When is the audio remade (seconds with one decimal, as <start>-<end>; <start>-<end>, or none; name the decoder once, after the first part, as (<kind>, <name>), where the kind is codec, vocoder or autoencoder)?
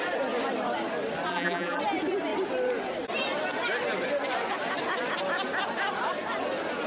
1.3-1.8 (vocoder, BigVGAN v2)